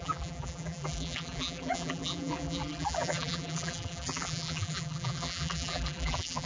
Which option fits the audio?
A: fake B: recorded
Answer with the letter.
A